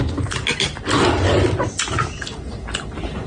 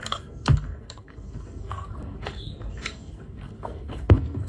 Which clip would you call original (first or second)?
first